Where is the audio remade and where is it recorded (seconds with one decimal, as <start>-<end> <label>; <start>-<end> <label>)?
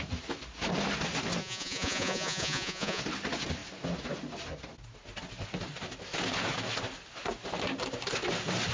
0.0-1.4 recorded; 1.4-3.0 remade; 3.0-8.7 recorded